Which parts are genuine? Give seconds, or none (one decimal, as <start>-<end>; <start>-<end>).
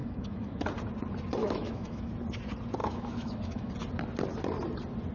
0.6-1.4; 2.1-2.8; 3.7-5.1